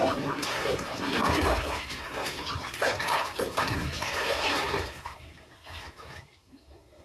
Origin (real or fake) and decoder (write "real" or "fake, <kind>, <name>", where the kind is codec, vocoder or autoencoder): fake, codec, SNAC